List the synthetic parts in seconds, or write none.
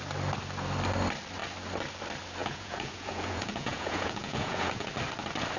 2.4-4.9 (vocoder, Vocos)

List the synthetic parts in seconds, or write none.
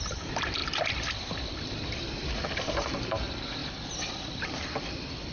0.0-0.6 (vocoder, BigVGAN v2); 2.0-3.6; 4.1-5.3